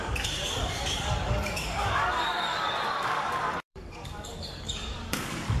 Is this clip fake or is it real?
fake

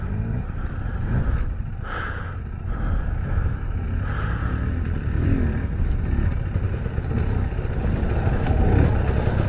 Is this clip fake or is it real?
real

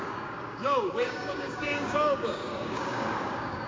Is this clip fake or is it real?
fake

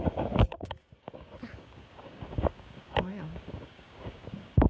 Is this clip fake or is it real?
fake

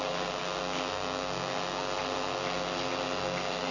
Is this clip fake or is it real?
real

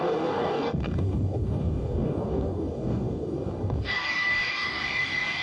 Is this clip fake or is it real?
fake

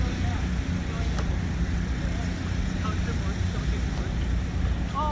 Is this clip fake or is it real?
real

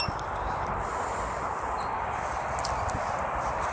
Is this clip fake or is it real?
real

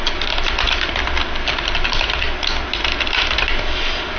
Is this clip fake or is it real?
real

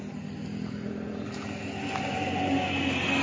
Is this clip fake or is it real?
real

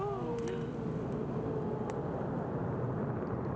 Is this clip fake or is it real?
real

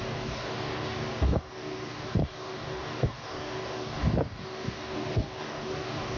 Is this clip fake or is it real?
fake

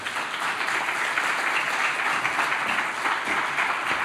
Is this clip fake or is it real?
real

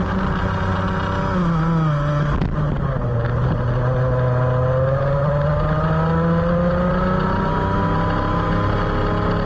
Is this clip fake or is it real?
real